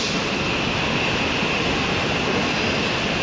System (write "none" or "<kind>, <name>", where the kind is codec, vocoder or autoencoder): vocoder, BigVGAN v2